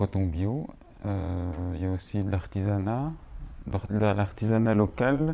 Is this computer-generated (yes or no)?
yes